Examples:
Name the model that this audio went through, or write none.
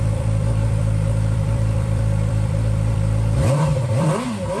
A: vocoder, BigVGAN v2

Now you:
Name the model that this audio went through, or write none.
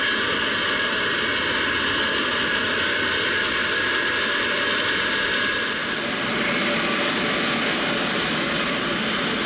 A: none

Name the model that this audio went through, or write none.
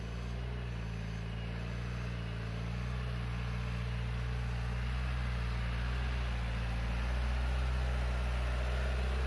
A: none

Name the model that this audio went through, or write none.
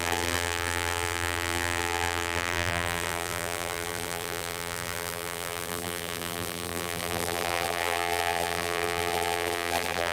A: vocoder, BigVGAN v2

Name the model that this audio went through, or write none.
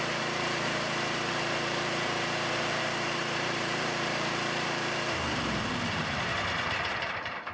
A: vocoder, BigVGAN v2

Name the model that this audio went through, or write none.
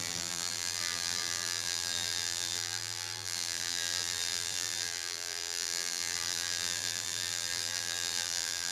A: vocoder, BigVGAN v2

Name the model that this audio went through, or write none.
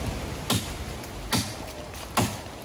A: none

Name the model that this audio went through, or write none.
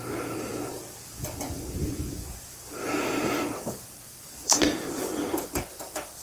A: vocoder, BigVGAN v2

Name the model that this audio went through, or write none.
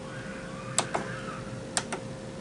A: none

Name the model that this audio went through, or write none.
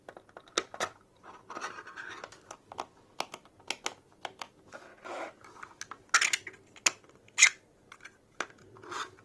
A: none